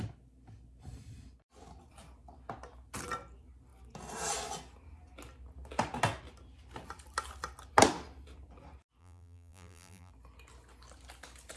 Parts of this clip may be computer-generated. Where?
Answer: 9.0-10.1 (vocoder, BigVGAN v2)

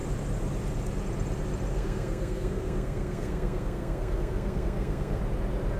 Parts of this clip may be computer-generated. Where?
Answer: 1.7-5.2 (codec, SNAC)

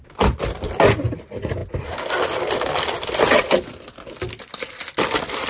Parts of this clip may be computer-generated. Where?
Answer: none

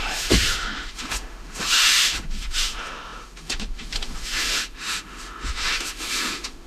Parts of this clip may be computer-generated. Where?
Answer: 0.0-6.7 (autoencoder, DAC-VAE)

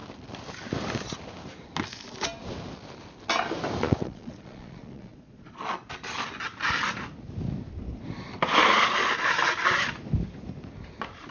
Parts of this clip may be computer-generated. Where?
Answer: 3.8-5.6 (vocoder, Vocos)